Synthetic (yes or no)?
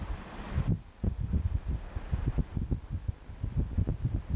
no